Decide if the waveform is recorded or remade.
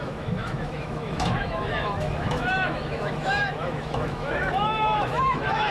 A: remade